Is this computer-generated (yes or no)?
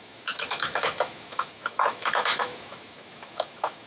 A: yes